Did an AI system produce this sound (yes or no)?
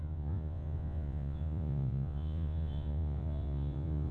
yes